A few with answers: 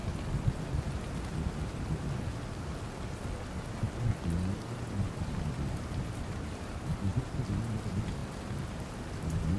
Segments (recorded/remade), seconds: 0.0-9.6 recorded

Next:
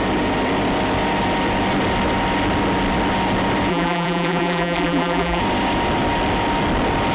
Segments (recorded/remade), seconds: 0.0-3.7 recorded; 3.7-5.4 remade; 5.4-7.1 recorded